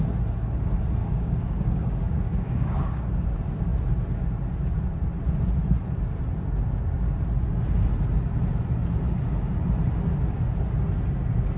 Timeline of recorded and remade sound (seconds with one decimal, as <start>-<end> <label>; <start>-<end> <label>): 0.0-1.0 recorded; 1.0-3.1 remade; 3.1-11.6 recorded